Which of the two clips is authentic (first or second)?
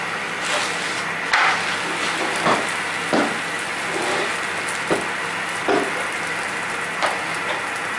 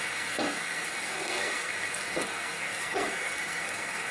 first